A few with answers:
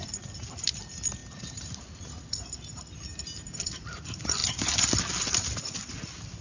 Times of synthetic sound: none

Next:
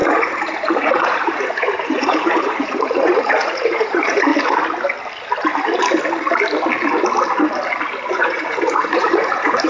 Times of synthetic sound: 0.0-4.3 (vocoder, Vocos); 8.1-9.7